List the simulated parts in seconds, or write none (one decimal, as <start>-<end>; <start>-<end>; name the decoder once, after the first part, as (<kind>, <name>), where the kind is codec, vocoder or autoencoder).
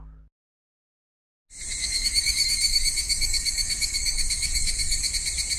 1.8-5.1 (codec, DAC)